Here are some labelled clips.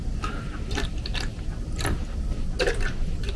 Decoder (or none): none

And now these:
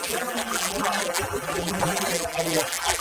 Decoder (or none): vocoder, BigVGAN v2